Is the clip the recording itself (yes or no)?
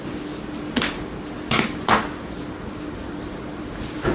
yes